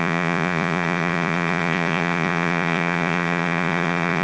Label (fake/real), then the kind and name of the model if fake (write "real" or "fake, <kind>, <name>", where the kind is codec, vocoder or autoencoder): fake, vocoder, Vocos